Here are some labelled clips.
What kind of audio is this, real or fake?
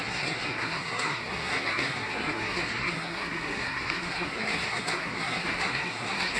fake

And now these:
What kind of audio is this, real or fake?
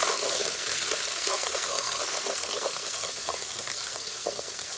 fake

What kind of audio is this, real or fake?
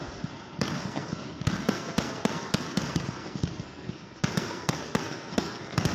fake